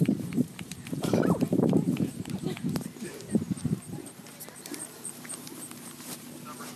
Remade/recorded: remade